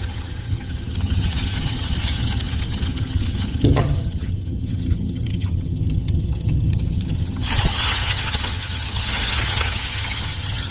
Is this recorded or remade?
remade